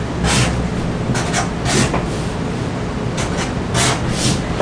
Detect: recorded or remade recorded